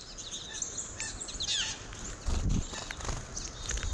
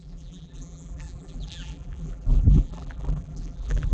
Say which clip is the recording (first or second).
first